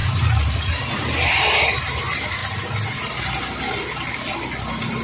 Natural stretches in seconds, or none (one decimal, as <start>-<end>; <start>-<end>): 2.0-2.4; 3.2-5.0

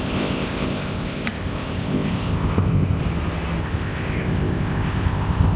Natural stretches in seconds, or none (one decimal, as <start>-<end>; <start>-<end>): 3.0-3.6

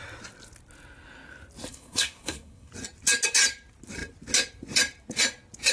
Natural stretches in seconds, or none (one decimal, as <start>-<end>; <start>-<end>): 0.0-1.7; 2.7-5.7

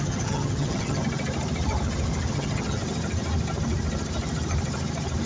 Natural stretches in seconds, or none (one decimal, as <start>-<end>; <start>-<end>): 1.0-2.3; 2.8-5.3